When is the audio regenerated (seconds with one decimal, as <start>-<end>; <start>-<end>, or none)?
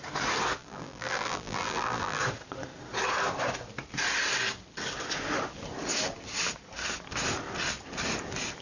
0.6-2.2